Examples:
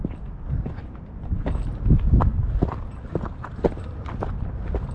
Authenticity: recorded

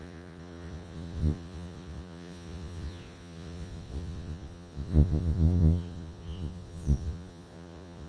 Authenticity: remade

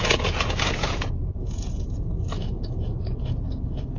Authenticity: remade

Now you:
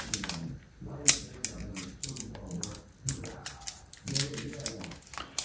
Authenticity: recorded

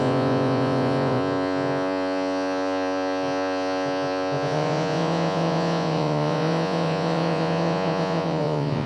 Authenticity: remade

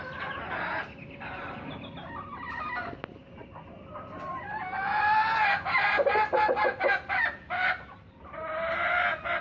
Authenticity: recorded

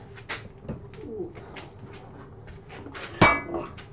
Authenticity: recorded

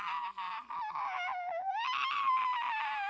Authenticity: recorded